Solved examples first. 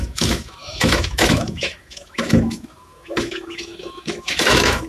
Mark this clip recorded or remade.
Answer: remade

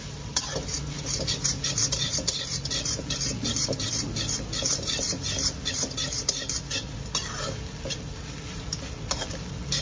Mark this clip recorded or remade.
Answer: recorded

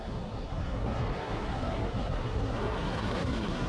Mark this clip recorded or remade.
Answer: remade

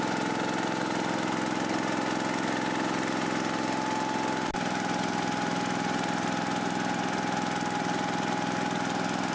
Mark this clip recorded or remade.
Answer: recorded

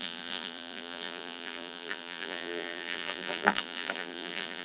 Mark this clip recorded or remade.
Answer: remade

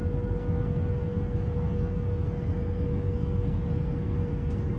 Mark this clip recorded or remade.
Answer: remade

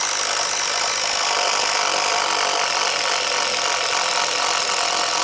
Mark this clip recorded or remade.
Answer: recorded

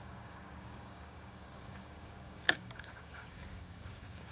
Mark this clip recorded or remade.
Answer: remade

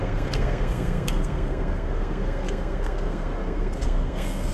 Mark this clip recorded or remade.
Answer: remade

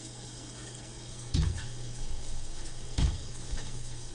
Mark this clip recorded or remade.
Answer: remade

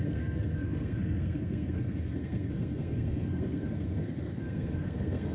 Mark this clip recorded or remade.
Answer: remade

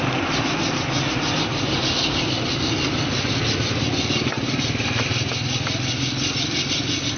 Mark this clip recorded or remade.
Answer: recorded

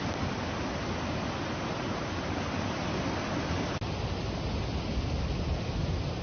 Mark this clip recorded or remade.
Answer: recorded